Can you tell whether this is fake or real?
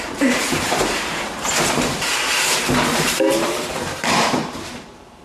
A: fake